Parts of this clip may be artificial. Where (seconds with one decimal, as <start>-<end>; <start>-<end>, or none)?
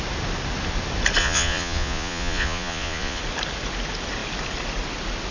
1.2-3.2